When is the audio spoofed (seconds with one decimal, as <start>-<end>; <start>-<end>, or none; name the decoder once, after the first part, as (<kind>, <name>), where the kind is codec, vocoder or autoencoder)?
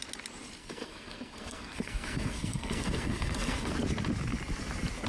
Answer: 0.6-3.7 (codec, SNAC)